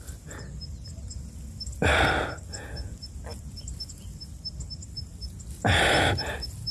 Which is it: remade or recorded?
recorded